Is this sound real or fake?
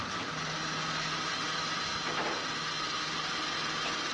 real